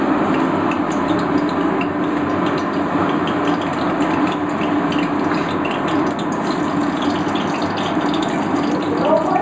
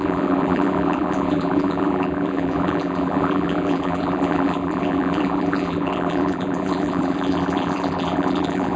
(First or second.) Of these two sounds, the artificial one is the second